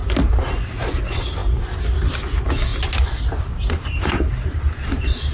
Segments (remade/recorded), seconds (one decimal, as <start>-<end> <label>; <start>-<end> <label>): 0.0-5.3 recorded